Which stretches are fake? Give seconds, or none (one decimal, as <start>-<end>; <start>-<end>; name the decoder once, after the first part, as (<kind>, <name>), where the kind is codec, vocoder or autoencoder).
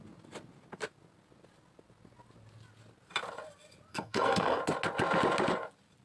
3.9-4.6 (codec, SNAC)